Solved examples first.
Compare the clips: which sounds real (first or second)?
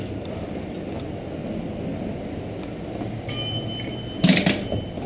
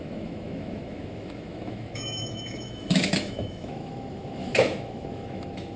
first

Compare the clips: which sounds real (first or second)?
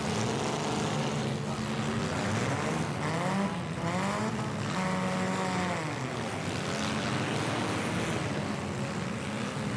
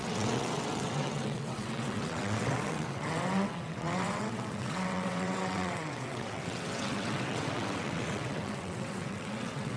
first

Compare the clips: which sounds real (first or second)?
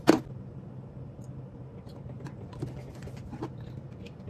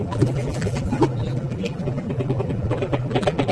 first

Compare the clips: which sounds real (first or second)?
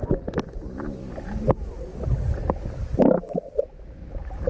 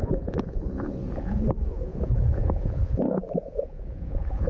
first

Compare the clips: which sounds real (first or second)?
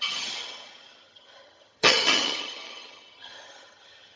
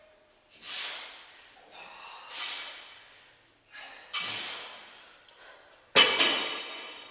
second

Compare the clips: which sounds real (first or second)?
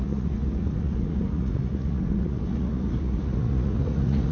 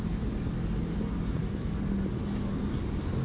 second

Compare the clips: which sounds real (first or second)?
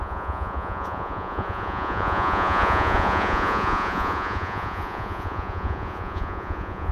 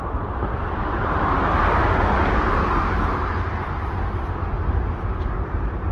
second